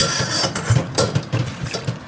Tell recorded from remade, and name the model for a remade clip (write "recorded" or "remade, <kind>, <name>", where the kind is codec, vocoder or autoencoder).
remade, vocoder, BigVGAN v2